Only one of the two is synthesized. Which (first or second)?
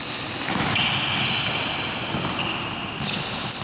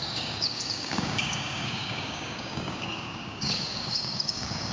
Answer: second